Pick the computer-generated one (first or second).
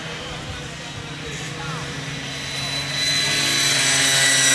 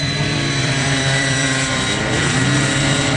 second